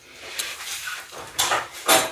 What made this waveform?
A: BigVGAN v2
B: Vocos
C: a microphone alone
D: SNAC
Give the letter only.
A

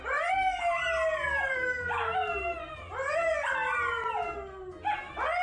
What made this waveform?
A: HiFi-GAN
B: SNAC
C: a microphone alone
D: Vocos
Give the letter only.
C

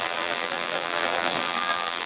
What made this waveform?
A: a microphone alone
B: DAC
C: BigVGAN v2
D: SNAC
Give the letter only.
C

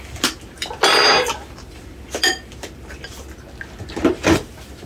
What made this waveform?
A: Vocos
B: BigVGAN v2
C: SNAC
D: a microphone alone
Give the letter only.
D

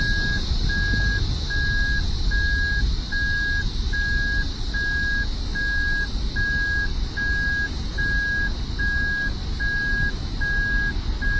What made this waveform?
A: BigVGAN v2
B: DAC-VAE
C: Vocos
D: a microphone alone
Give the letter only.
D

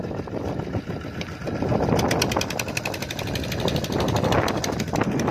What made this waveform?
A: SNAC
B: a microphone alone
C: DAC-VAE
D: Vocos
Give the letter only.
B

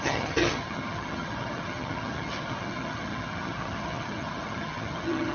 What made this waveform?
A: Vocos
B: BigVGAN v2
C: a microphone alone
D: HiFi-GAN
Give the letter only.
D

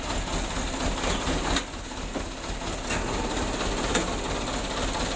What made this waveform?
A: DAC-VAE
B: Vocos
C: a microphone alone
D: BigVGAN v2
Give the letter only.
C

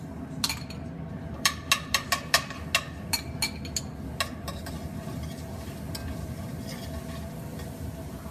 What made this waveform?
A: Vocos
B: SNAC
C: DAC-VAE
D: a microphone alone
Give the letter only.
D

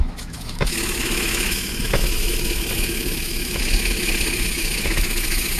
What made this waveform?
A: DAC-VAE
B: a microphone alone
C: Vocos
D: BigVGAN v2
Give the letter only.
A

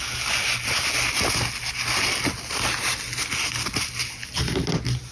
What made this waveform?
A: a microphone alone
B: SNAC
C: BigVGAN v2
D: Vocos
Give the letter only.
A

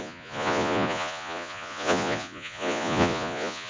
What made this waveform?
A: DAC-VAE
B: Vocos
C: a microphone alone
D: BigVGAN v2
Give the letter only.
B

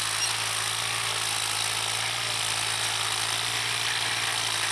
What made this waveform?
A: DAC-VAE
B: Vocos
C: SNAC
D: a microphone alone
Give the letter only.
D